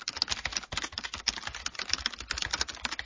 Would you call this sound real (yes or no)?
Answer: yes